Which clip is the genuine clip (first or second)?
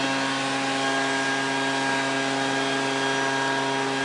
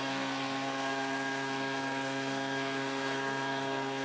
first